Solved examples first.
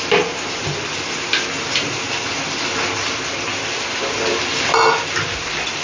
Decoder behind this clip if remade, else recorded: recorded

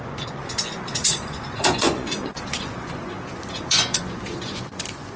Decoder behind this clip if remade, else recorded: remade, vocoder, Vocos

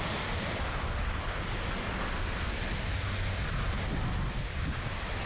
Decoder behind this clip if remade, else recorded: recorded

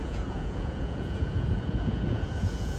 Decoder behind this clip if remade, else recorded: remade, vocoder, Vocos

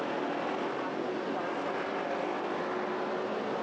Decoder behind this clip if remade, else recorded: recorded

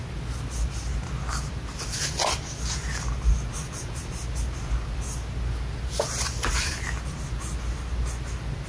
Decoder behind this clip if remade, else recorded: recorded